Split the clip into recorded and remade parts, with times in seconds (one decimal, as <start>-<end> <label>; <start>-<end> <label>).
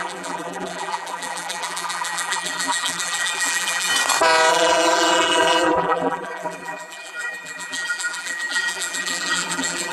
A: 0.0-3.9 remade; 3.9-4.5 recorded; 4.5-9.9 remade